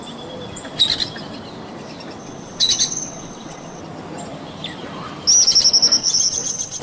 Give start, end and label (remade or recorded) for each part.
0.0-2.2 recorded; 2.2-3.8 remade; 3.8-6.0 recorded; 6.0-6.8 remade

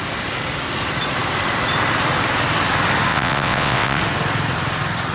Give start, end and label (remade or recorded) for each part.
0.0-3.1 recorded; 3.1-4.0 remade; 4.0-5.1 recorded

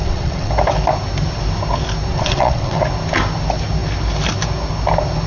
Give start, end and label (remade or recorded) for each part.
0.0-0.5 remade; 0.5-2.1 recorded; 2.1-2.8 remade; 2.8-5.3 recorded

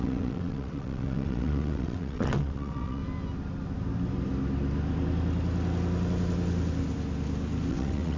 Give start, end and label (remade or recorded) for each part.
0.0-3.0 remade; 3.0-7.7 recorded; 7.7-8.2 remade

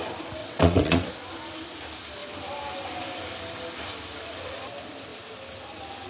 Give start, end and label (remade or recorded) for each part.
0.0-0.4 recorded; 0.4-1.1 remade; 1.1-6.1 recorded

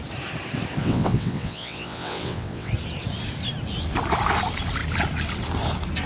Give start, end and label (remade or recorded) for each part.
0.0-0.8 recorded; 0.8-2.7 remade; 2.7-6.1 recorded

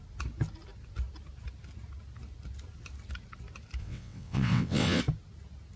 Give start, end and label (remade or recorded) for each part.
0.0-3.8 recorded; 3.8-5.0 remade; 5.0-5.8 recorded